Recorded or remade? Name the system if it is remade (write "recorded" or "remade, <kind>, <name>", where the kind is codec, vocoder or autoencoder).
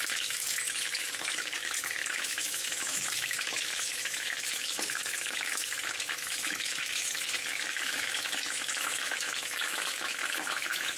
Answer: remade, autoencoder, DAC-VAE